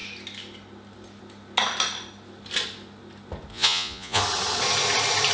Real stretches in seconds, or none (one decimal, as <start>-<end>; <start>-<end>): 0.0-3.5; 4.2-5.3